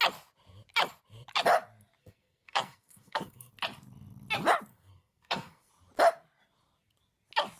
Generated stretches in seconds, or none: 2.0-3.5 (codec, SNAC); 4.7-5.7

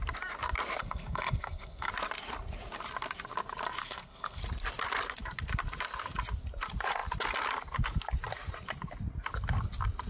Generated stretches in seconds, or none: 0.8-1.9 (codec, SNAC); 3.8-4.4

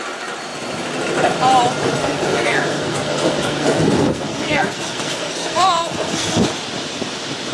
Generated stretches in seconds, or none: 2.0-6.5 (codec, SNAC)

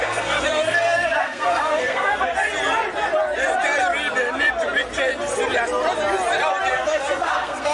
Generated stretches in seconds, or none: 0.0-2.3 (codec, SNAC); 6.7-7.7

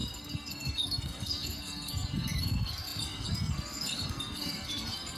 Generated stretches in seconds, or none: 0.0-5.2 (codec, SNAC)

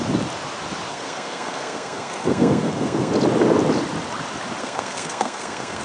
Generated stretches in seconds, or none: 0.9-3.1 (codec, SNAC); 4.6-5.8

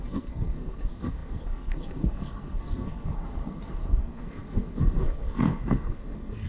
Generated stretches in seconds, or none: 0.0-6.5 (codec, SNAC)